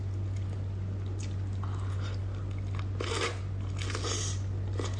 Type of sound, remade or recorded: recorded